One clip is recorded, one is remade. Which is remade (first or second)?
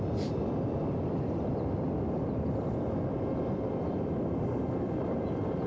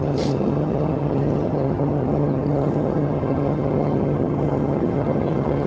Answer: second